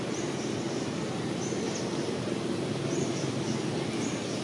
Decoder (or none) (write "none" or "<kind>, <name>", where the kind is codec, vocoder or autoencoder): none